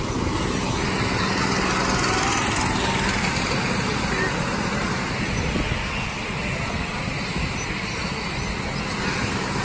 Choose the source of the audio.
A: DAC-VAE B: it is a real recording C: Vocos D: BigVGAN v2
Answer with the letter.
B